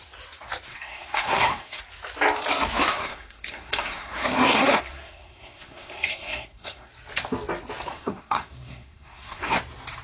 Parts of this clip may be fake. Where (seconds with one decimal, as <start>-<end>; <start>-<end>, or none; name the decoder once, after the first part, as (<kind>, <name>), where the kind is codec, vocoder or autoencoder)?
0.7-1.8 (codec, SNAC); 2.9-6.9; 7.9-9.5